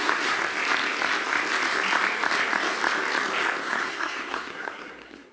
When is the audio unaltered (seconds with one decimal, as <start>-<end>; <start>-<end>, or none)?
0.4-3.6